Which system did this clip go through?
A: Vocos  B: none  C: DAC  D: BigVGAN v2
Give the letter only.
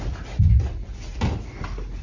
B